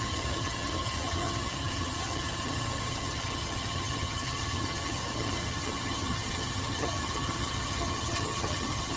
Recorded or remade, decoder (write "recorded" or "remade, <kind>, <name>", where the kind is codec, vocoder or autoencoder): remade, vocoder, HiFi-GAN